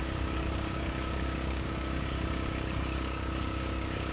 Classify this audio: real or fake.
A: fake